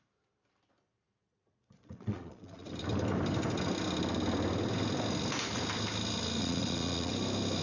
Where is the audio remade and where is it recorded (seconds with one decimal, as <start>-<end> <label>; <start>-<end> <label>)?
0.0-1.2 recorded; 1.2-2.7 remade; 2.7-6.4 recorded; 6.4-7.1 remade; 7.1-7.6 recorded